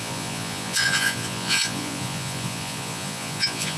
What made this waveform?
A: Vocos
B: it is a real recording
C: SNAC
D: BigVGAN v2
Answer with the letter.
A